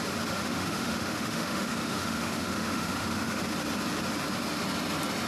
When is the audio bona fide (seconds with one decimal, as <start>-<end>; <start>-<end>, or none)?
0.0-0.4; 3.4-5.3